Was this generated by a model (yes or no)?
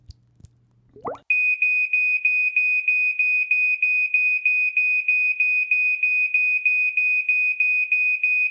no